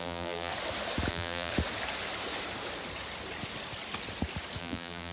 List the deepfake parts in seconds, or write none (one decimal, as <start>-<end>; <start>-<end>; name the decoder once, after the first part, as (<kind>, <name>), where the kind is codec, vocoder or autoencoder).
0.0-0.5 (vocoder, BigVGAN v2); 1.1-1.5; 4.6-5.1